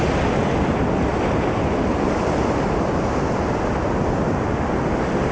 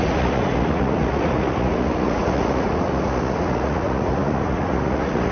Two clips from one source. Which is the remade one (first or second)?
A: second